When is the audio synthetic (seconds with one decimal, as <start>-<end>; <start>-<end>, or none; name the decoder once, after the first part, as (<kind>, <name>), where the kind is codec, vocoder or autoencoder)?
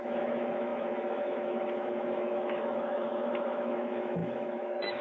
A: 0.0-5.0 (autoencoder, DAC-VAE)